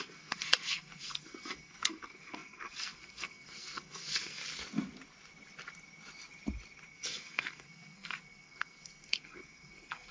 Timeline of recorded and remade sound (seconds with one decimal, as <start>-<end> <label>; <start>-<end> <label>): 0.0-4.4 remade; 4.4-6.9 recorded; 6.9-10.1 remade